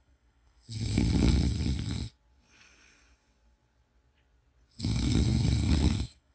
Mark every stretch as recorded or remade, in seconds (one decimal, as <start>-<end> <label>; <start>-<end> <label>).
0.0-1.0 remade; 1.0-4.8 recorded; 4.8-6.3 remade